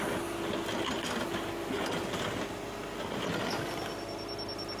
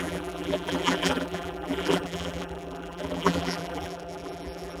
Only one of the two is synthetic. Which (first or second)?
second